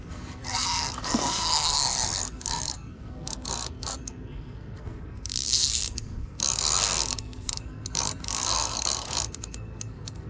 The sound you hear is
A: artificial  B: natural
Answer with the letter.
A